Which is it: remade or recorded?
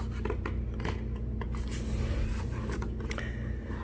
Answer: recorded